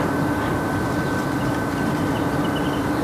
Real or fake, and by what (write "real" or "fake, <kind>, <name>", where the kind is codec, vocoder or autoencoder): real